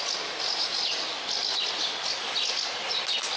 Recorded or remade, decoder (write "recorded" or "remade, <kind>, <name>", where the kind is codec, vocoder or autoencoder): recorded